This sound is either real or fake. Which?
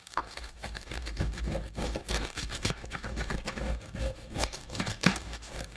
fake